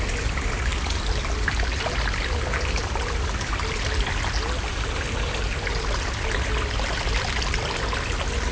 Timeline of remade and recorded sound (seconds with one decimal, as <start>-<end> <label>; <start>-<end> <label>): 0.0-8.5 recorded